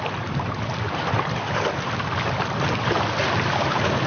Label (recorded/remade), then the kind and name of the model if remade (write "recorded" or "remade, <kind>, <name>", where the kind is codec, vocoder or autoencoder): recorded